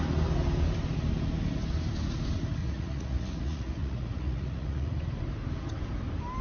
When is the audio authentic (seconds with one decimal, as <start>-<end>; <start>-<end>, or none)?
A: 0.0-2.6; 5.0-6.4